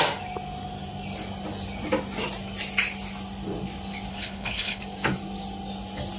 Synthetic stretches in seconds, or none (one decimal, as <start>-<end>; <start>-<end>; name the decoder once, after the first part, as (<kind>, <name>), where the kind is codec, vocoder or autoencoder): 4.1-4.8 (codec, HILCodec)